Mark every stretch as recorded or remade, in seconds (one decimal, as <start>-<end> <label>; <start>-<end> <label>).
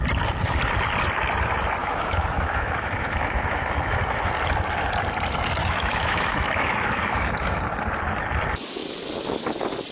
0.0-1.8 recorded; 1.8-4.3 remade; 4.3-5.6 recorded; 5.6-7.6 remade; 7.6-9.9 recorded